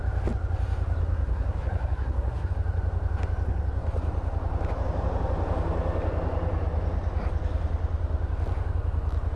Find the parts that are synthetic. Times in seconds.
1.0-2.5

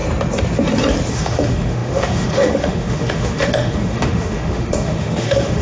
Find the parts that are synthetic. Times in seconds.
1.1-5.6

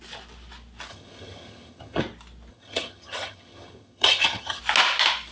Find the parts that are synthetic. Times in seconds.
0.9-2.0; 2.5-4.6

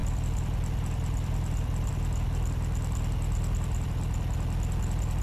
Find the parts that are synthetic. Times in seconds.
none

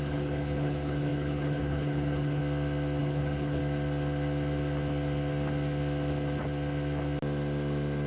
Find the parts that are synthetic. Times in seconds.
0.0-2.4; 3.0-3.6